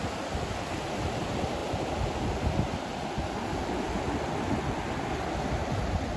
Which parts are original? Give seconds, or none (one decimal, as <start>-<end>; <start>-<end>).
0.0-6.2

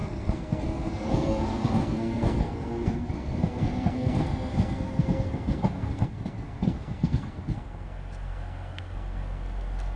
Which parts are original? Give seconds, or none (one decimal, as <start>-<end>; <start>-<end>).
none